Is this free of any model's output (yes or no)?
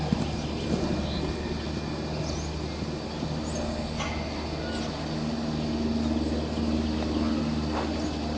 yes